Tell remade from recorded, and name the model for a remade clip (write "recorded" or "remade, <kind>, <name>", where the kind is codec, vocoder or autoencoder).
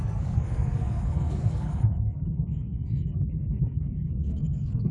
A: remade, codec, SNAC